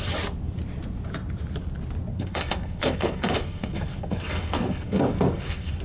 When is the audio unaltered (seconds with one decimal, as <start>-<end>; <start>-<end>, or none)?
0.0-2.1